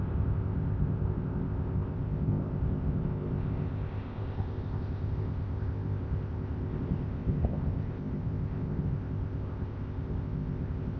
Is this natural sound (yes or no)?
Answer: no